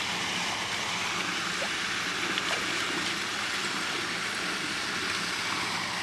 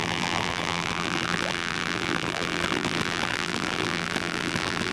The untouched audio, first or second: first